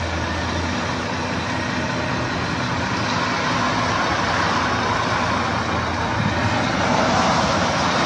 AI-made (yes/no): no